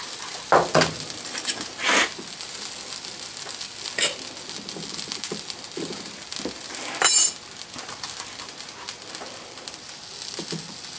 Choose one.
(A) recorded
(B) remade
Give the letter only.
A